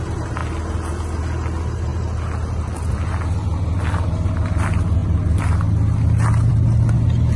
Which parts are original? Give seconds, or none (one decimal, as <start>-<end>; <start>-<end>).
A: 0.0-7.4